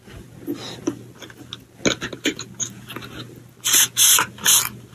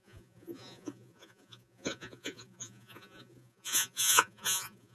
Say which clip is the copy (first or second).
second